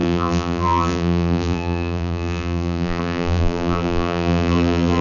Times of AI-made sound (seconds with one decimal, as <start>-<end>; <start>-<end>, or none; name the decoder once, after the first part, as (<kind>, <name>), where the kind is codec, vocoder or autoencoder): 0.0-5.0 (vocoder, BigVGAN v2)